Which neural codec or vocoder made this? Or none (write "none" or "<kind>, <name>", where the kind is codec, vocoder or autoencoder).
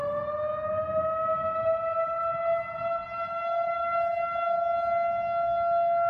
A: none